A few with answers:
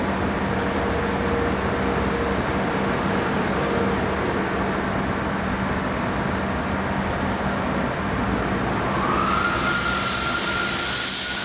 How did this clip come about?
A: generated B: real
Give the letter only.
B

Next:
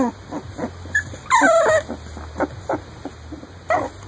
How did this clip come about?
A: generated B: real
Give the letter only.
B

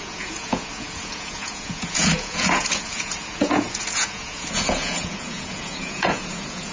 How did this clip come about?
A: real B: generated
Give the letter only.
B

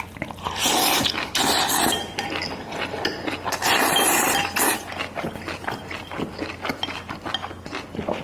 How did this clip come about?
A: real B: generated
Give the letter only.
A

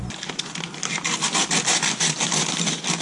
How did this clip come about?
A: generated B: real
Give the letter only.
B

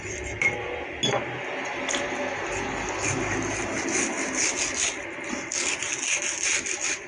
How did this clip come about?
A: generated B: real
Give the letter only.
B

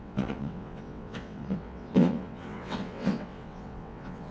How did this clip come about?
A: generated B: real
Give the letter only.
A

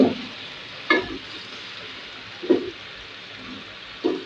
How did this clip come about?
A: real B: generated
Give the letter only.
A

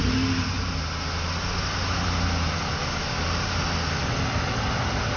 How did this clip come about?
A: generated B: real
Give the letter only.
B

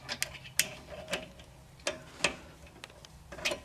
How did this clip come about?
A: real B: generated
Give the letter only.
A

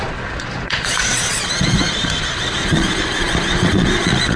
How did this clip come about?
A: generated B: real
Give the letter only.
A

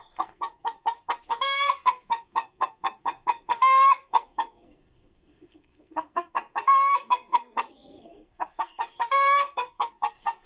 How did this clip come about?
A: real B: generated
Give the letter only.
B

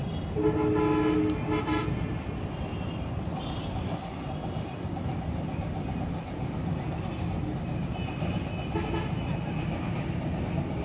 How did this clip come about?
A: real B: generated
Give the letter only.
A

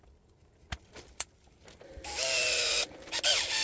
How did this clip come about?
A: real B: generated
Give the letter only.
A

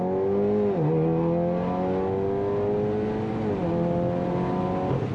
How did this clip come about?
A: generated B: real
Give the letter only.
B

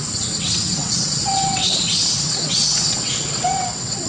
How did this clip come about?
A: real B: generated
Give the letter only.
B